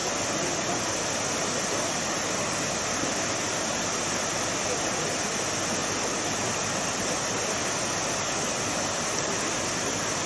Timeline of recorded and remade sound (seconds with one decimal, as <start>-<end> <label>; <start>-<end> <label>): 0.0-10.3 recorded